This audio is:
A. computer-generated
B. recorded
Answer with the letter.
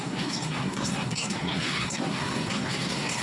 A